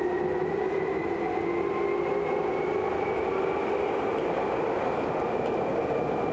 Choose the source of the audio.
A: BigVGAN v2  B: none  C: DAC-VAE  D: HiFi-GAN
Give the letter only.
B